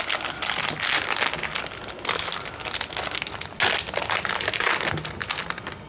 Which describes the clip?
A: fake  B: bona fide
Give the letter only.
B